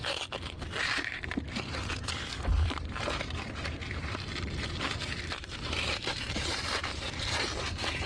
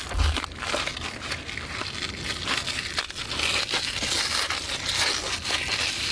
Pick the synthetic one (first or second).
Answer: first